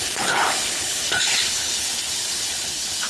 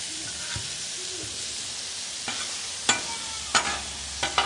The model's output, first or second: first